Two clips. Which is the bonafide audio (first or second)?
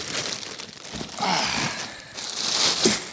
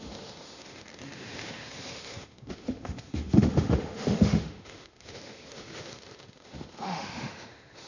first